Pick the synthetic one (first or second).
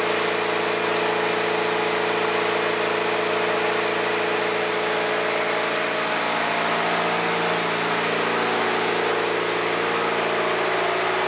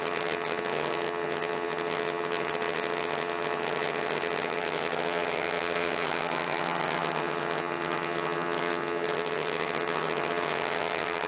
second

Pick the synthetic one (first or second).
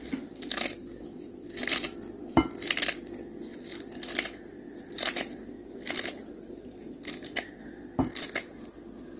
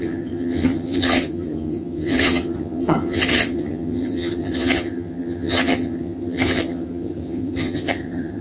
second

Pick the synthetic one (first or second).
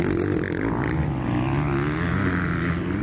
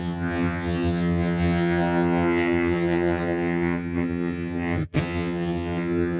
second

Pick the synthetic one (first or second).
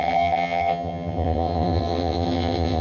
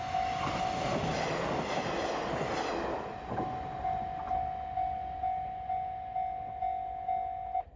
first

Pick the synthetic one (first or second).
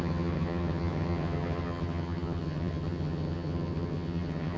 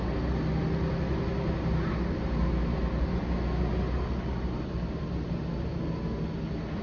first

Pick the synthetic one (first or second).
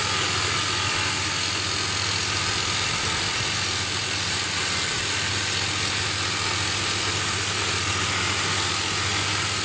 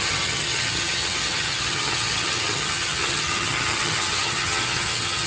second